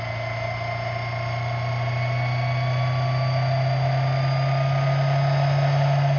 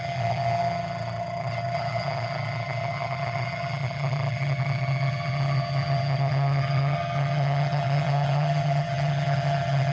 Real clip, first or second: first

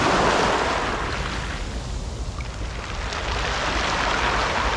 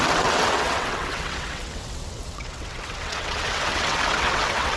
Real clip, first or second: first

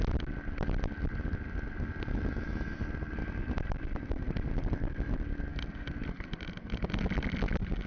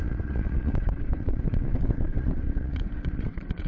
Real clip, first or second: first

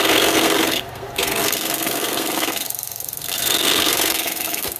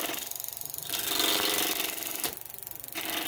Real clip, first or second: second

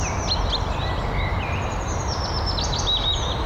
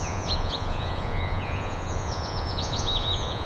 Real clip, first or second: first